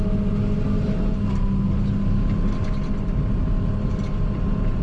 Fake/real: real